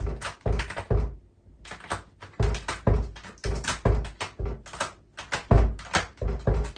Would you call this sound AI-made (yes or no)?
no